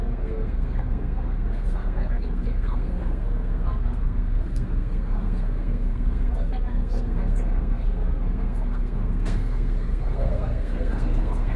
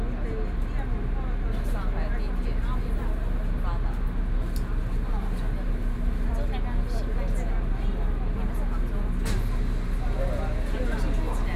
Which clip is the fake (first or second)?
first